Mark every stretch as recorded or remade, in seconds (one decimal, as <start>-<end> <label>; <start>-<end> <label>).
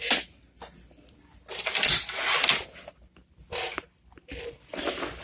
0.0-3.2 recorded; 3.2-4.8 remade; 4.8-5.2 recorded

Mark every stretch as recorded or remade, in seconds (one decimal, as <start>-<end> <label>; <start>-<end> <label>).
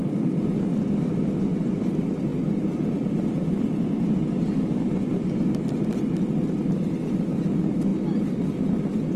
0.0-9.2 recorded